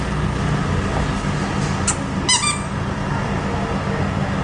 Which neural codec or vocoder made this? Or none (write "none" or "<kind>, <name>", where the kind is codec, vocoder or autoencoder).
none